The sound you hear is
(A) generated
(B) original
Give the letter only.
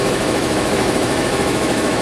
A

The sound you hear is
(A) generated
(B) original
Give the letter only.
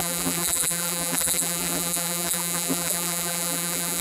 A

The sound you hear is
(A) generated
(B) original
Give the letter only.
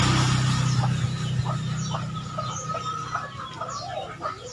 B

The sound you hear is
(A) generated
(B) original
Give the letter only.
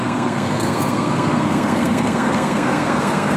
A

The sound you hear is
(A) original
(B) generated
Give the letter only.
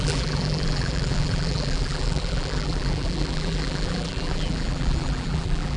B